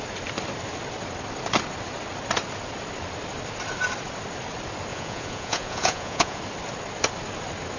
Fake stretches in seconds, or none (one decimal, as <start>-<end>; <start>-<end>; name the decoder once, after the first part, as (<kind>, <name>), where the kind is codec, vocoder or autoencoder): 4.9-6.4 (vocoder, Vocos)